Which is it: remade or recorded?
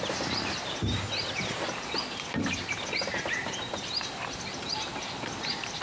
recorded